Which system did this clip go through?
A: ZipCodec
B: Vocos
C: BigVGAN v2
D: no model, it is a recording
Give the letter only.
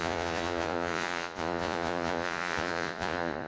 B